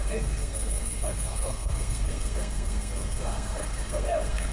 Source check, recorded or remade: remade